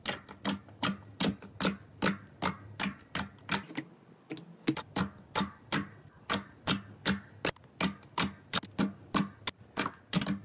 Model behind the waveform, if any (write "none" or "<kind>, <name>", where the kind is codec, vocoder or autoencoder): none